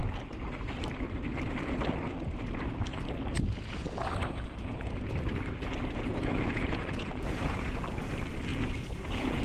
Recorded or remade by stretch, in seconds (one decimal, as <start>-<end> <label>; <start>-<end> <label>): 0.0-4.2 recorded; 4.2-5.1 remade; 5.1-6.1 recorded; 6.1-7.8 remade; 7.8-8.5 recorded; 8.5-9.4 remade